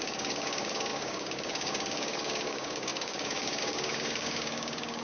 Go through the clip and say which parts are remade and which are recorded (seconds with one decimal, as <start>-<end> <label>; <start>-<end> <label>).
0.0-5.0 remade